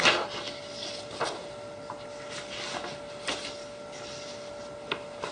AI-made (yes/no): no